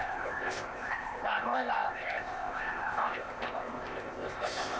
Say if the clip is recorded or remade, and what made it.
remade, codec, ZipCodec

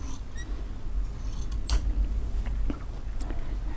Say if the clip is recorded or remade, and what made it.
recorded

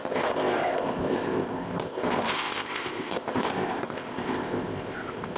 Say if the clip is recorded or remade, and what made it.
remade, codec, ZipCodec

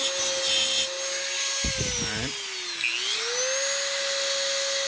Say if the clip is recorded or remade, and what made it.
recorded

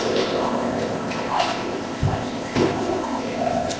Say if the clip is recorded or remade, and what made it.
remade, codec, ZipCodec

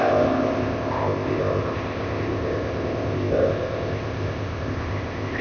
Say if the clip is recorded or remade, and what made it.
remade, codec, ZipCodec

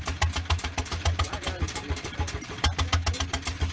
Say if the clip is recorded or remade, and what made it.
recorded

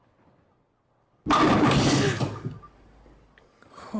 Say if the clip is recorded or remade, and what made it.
recorded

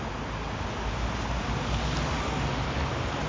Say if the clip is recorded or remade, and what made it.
recorded